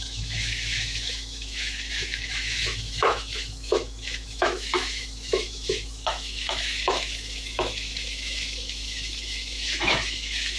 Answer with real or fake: fake